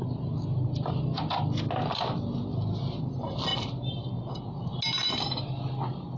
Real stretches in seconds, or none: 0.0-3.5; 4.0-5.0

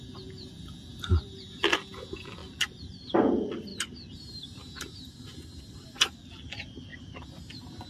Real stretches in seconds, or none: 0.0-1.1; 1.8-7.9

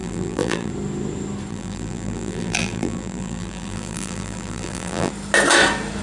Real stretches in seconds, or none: 0.7-1.5; 5.1-6.0

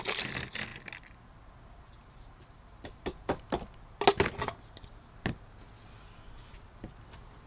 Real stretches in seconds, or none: 0.0-7.5